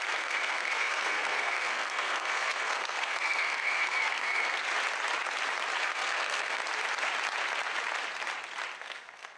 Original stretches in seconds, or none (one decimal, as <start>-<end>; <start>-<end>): 4.6-5.8; 6.6-8.8